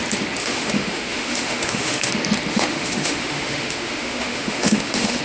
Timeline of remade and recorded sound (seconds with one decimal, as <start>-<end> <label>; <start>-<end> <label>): 0.0-0.4 recorded; 0.4-2.1 remade; 2.1-2.5 recorded; 2.5-5.2 remade